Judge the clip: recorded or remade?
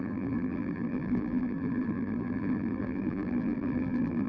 remade